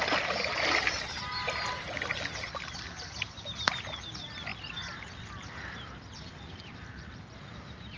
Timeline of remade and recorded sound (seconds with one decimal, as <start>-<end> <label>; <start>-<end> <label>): 0.0-8.0 recorded